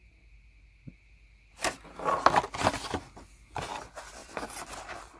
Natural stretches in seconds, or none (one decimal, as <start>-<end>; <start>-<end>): 0.0-4.2